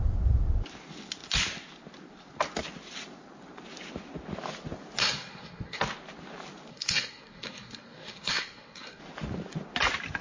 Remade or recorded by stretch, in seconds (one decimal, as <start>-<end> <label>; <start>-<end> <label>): 0.0-5.0 recorded; 5.0-5.8 remade; 5.8-6.7 recorded; 6.7-9.0 remade; 9.0-10.2 recorded